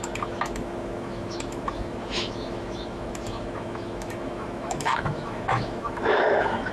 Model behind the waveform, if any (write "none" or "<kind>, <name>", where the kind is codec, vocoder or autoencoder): autoencoder, DAC-VAE